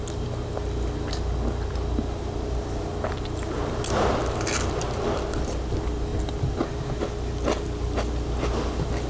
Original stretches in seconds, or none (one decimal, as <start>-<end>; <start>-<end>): 0.0-9.1